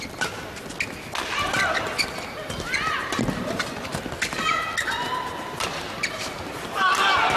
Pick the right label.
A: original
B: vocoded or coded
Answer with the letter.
A